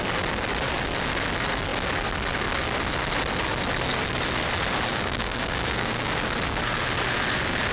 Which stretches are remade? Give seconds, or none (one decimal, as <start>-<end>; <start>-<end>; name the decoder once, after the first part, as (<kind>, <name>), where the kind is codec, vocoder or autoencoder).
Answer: 4.9-6.1 (codec, DAC)

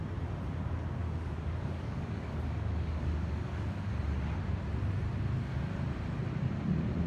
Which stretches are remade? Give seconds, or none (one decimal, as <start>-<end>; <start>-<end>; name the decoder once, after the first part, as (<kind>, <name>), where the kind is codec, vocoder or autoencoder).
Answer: 1.0-3.9 (codec, DAC)